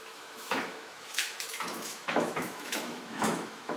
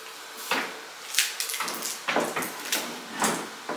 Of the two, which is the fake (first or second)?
first